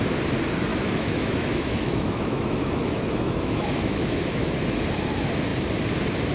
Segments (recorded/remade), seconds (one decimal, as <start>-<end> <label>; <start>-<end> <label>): 0.0-0.7 recorded; 0.7-4.5 remade; 4.5-6.3 recorded